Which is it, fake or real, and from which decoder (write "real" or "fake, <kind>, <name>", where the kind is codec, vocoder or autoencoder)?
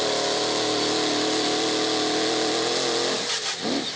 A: real